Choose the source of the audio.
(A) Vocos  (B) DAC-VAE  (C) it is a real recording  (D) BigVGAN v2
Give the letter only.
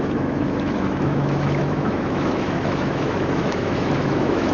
B